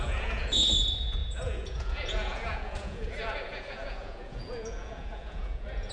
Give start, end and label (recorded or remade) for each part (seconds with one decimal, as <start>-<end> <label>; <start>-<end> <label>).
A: 0.0-5.9 remade